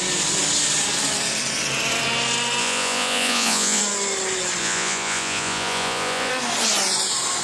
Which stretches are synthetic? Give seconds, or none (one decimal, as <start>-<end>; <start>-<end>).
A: 2.6-3.8; 4.6-6.3